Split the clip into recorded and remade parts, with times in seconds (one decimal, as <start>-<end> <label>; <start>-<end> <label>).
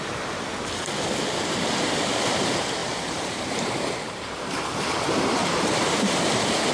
0.0-2.8 recorded; 2.8-4.9 remade; 4.9-5.4 recorded; 5.4-6.2 remade; 6.2-6.7 recorded